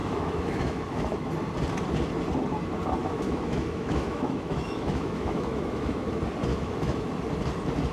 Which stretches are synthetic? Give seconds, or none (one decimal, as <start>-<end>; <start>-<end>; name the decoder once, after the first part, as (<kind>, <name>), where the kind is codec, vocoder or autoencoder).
0.0-1.3 (autoencoder, DAC-VAE); 3.0-6.1; 6.5-7.1